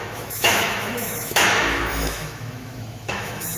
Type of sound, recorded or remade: remade